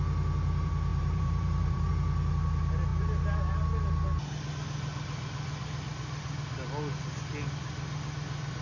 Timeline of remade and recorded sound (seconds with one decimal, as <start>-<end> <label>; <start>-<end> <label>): 0.0-0.9 recorded; 0.9-1.9 remade; 1.9-8.6 recorded